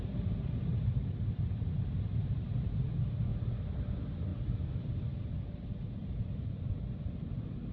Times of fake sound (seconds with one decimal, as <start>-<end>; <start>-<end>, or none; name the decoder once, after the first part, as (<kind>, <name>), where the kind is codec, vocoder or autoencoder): 0.7-2.9 (vocoder, BigVGAN v2); 4.3-5.3; 6.0-6.7